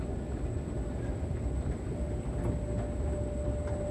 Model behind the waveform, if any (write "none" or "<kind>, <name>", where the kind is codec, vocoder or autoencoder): none